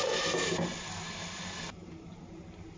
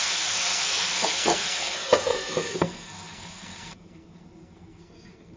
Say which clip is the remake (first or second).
second